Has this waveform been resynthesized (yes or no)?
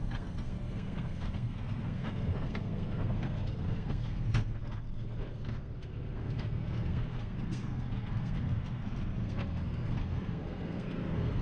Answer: yes